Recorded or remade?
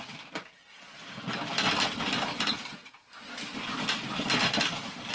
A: recorded